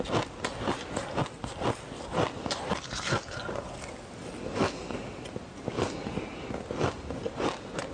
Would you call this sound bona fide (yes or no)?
yes